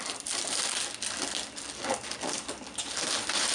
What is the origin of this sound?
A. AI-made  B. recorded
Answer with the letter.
B